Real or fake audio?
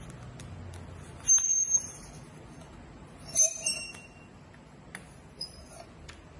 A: real